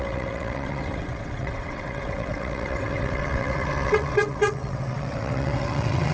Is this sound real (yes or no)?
no